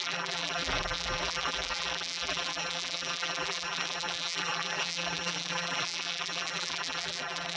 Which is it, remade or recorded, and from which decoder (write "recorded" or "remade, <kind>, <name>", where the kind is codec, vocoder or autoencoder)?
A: remade, vocoder, BigVGAN v2